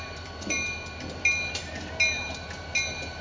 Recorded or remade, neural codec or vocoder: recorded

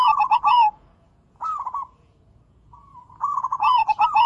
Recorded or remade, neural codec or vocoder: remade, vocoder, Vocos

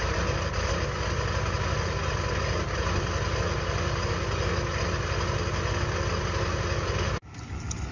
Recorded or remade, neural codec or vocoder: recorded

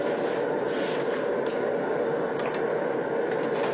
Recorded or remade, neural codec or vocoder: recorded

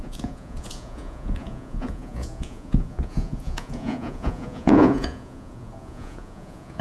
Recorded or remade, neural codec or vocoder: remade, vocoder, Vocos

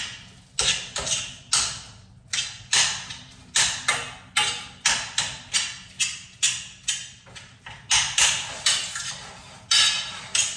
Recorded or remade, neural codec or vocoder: recorded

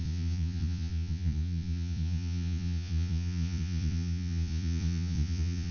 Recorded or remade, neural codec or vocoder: remade, vocoder, Vocos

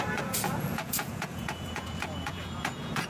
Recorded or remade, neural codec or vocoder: remade, vocoder, Vocos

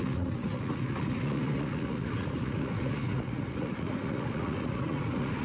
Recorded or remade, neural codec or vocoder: remade, vocoder, Vocos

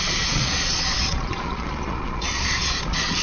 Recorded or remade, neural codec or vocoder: remade, vocoder, Vocos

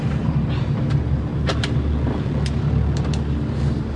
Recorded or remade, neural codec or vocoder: recorded